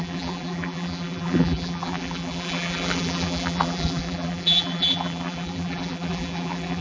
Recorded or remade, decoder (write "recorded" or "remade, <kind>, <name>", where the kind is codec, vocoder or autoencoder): remade, vocoder, BigVGAN v2